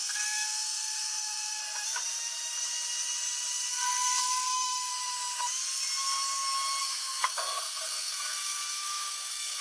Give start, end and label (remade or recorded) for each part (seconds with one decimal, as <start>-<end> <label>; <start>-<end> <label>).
0.0-1.6 remade; 1.6-3.7 recorded; 3.7-4.9 remade; 4.9-6.8 recorded; 6.8-9.6 remade